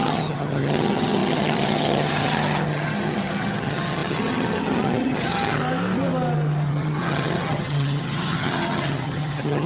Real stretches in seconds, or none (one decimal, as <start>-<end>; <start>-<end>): 5.6-6.7